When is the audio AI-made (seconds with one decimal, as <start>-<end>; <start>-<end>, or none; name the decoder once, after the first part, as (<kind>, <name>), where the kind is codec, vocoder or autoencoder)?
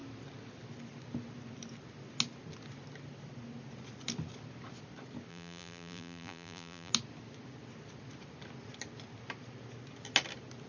5.3-6.9 (vocoder, BigVGAN v2)